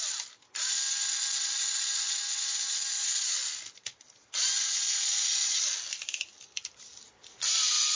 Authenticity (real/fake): real